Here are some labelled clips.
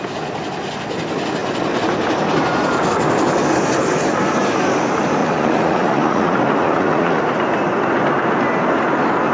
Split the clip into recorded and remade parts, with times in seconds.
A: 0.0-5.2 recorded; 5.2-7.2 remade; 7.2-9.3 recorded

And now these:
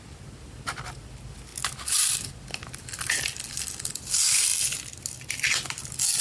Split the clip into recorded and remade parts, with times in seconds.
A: 0.0-6.2 recorded

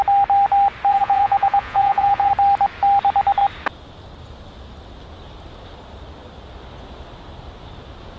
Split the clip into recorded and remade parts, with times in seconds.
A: 0.0-0.9 recorded; 0.9-2.3 remade; 2.3-8.2 recorded

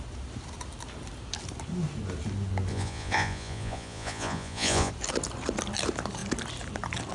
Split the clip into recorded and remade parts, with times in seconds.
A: 0.0-2.7 recorded; 2.7-4.9 remade; 4.9-7.1 recorded

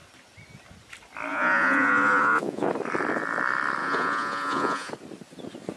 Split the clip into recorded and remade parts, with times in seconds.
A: 0.0-1.3 recorded; 1.3-2.7 remade; 2.7-3.8 recorded; 3.8-4.9 remade; 4.9-5.8 recorded